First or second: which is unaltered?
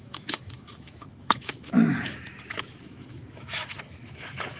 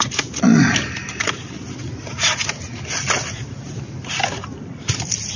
second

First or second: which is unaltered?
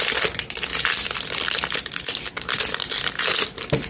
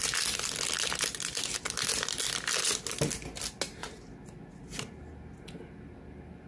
second